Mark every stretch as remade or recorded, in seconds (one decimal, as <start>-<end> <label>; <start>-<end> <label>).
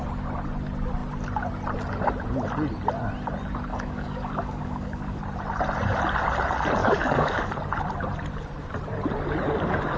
0.0-3.7 recorded; 3.7-5.2 remade; 5.2-6.8 recorded; 6.8-7.5 remade; 7.5-10.0 recorded